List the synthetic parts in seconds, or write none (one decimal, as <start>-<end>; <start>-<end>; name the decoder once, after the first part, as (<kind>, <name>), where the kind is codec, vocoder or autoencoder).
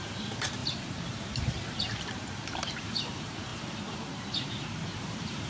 0.0-5.5 (vocoder, BigVGAN v2)